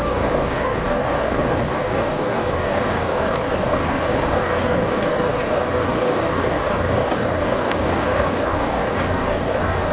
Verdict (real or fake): fake